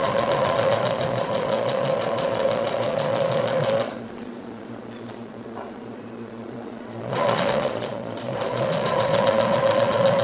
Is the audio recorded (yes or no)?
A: no